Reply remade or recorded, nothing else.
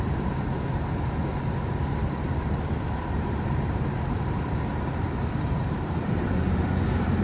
remade